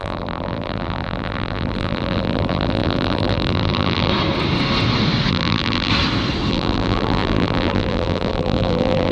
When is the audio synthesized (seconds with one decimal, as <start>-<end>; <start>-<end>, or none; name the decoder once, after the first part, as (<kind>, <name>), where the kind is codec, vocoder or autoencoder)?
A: 0.0-4.1 (vocoder, BigVGAN v2); 5.3-5.9; 6.5-9.1